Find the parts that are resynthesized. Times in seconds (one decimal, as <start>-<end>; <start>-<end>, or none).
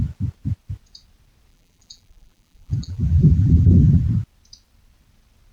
1.5-4.0